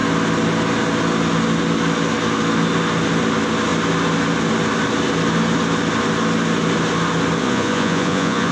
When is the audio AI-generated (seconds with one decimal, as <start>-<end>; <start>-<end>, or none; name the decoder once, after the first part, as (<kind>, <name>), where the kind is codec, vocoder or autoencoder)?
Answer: 7.4-8.5 (vocoder, Vocos)